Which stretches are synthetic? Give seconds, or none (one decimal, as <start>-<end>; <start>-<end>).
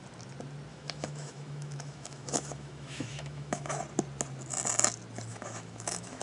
0.7-3.8; 5.3-6.2